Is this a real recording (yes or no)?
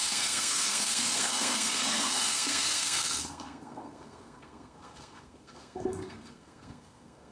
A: no